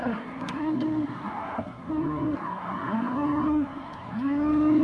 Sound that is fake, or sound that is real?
fake